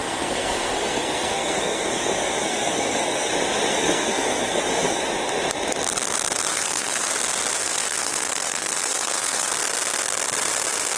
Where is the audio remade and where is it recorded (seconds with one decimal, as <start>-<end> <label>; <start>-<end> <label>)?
0.0-3.3 remade; 3.3-3.7 recorded; 3.7-5.0 remade; 5.0-6.5 recorded; 6.5-7.1 remade; 7.1-7.6 recorded; 7.6-9.5 remade; 9.5-11.0 recorded